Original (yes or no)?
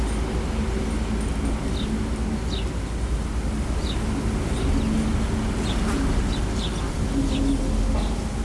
yes